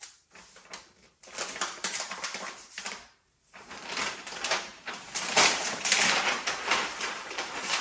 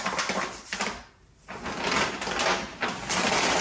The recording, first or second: second